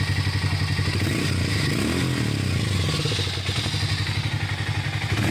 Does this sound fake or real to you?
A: real